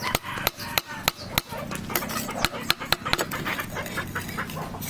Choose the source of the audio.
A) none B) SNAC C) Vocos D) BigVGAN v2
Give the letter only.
A